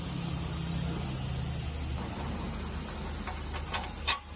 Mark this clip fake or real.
real